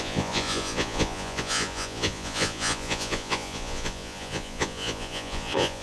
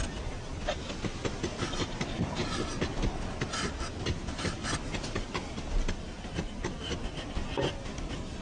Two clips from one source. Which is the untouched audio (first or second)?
second